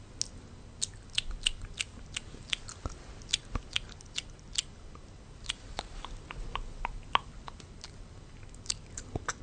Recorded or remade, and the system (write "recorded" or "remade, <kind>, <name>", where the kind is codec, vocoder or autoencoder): recorded